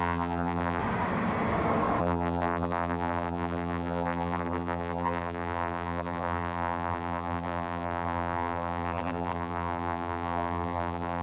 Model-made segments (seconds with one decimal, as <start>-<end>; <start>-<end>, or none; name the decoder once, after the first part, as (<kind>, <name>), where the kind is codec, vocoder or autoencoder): 0.0-0.8 (vocoder, BigVGAN v2); 2.0-11.2